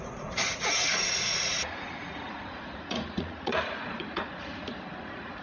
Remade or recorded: remade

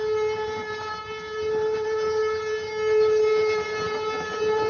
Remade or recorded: recorded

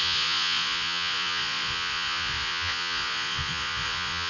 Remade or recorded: remade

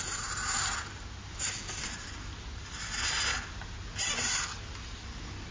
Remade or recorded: recorded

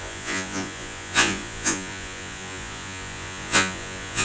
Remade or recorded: remade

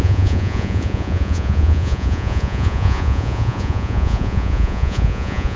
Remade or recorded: remade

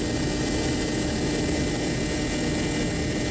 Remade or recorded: recorded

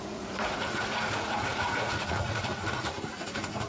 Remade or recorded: remade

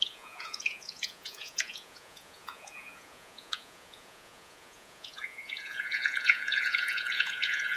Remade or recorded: remade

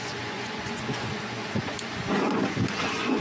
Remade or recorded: remade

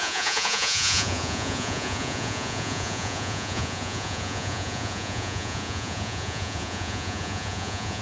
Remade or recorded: remade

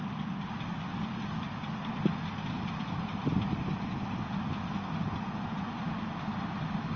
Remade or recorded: recorded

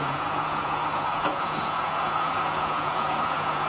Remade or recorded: remade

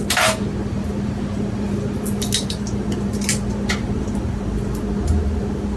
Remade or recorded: recorded